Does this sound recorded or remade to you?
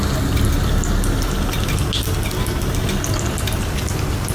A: recorded